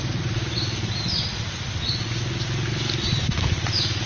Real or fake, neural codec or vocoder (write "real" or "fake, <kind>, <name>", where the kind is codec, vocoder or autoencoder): real